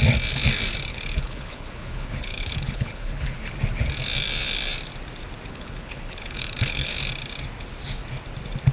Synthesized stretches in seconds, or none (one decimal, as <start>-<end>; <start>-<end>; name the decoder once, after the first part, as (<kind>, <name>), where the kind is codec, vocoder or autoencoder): 0.9-3.5 (codec, HILCodec); 5.5-6.9